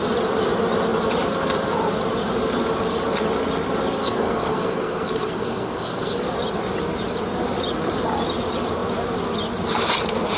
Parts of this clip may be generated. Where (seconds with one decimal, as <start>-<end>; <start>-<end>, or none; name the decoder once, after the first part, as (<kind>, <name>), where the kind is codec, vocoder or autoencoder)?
4.0-6.2 (codec, SNAC)